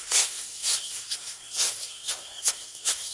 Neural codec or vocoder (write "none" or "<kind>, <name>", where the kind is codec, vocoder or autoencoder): codec, SNAC